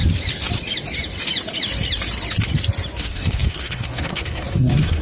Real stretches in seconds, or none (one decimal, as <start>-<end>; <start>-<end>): 0.0-3.0